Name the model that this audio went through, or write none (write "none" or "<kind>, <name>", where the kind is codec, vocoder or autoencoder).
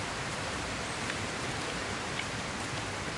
none